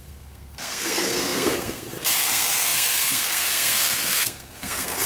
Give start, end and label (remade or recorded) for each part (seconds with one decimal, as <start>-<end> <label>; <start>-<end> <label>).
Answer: 0.0-5.1 remade